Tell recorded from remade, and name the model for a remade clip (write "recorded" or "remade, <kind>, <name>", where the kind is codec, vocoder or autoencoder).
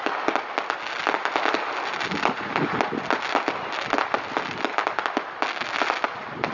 recorded